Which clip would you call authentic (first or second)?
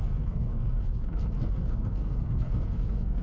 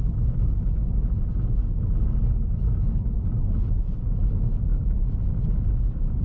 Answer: second